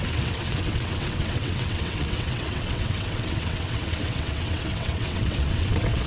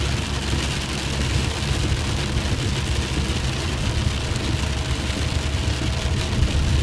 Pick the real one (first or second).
second